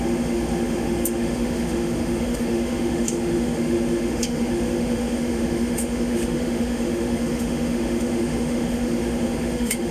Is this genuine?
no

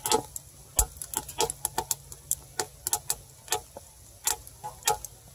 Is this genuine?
yes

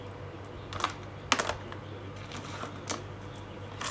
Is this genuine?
yes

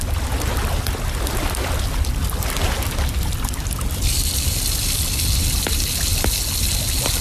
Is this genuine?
yes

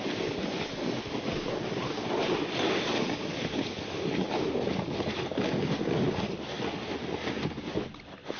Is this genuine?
yes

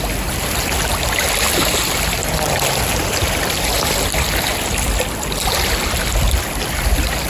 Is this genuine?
yes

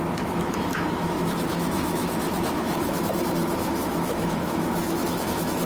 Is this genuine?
no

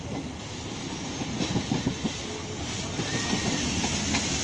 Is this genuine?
yes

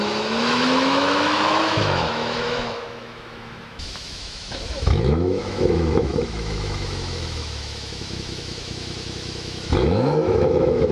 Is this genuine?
no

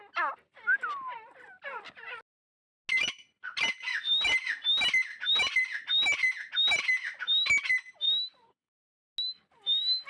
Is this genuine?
yes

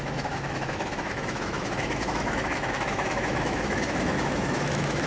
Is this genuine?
no